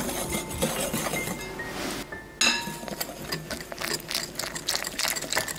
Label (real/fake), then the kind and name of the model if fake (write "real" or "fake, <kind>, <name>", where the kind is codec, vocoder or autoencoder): real